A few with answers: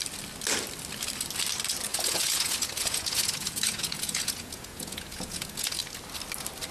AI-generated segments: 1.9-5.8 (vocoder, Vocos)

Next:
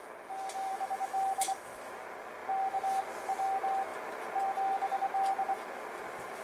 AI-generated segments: 0.7-1.9 (autoencoder, DAC-VAE)